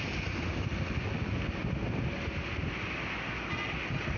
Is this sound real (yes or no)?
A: yes